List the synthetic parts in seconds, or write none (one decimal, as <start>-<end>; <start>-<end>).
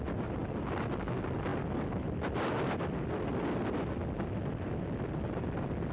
none